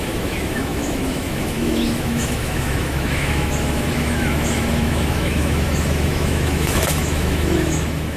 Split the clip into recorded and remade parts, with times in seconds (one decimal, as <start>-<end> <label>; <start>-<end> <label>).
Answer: 0.0-8.2 remade